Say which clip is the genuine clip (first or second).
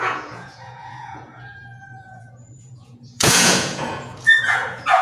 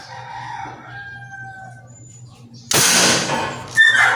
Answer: second